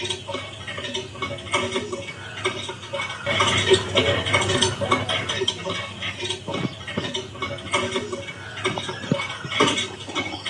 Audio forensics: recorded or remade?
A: recorded